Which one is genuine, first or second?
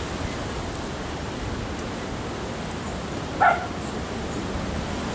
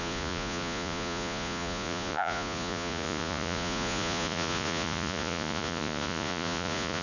first